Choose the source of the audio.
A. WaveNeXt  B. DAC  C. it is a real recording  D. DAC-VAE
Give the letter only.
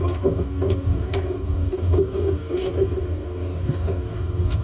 B